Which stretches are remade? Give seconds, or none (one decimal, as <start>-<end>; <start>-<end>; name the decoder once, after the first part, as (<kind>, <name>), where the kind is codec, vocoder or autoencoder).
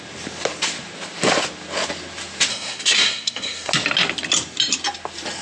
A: 2.5-3.7 (codec, SNAC)